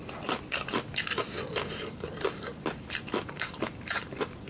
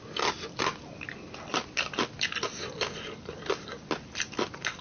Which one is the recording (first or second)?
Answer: second